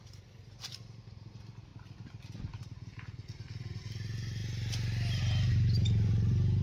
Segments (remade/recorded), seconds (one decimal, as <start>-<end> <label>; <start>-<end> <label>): 0.0-1.7 remade; 1.7-2.6 recorded; 2.6-6.6 remade

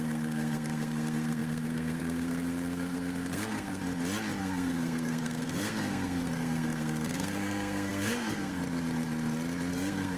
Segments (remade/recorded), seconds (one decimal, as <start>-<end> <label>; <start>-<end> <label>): 0.0-3.8 remade; 3.8-4.4 recorded; 4.4-8.6 remade; 8.6-9.7 recorded; 9.7-10.2 remade

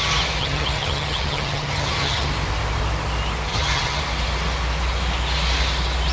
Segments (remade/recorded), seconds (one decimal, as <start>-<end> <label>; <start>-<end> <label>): 0.0-0.4 recorded; 0.4-2.3 remade; 2.3-3.5 recorded; 3.5-4.0 remade; 4.0-6.1 recorded

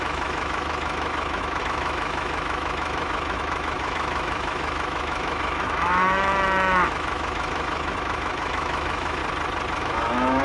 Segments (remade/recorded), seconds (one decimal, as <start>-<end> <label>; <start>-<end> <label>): 0.0-9.2 remade; 9.2-9.8 recorded; 9.8-10.4 remade

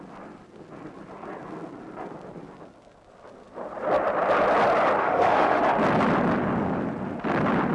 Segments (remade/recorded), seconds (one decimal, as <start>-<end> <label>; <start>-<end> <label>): 0.0-5.0 recorded; 5.0-5.6 remade; 5.6-7.7 recorded

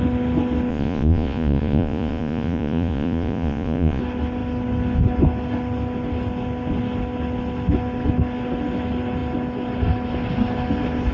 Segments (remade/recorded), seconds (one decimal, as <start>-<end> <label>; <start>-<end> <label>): 0.0-0.7 recorded; 0.7-4.0 remade; 4.0-11.1 recorded